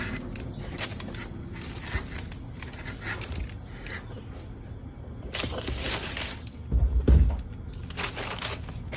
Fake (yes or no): no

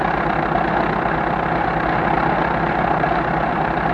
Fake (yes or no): no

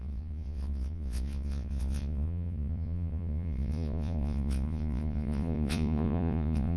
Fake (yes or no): yes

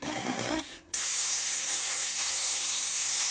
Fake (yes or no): yes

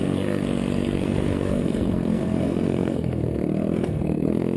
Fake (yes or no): yes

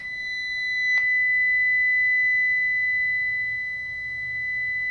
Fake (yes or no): no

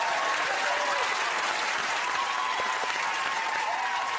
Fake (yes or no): yes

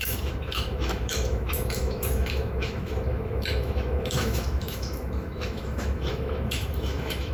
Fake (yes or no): yes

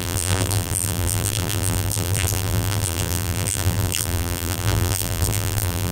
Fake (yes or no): yes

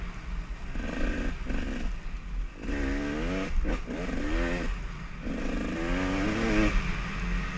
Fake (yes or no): no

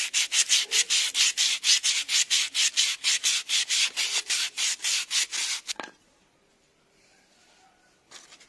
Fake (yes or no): no